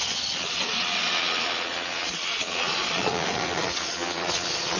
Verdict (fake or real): fake